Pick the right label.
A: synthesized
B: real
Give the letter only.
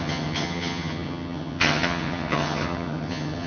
A